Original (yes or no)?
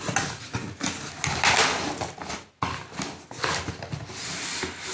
yes